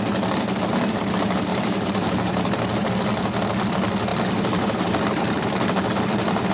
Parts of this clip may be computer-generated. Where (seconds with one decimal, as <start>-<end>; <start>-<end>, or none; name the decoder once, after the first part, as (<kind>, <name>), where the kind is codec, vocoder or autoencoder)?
1.5-2.9 (vocoder, BigVGAN v2); 4.1-6.0